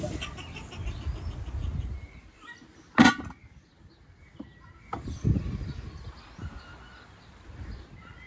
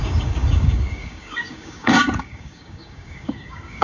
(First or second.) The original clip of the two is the first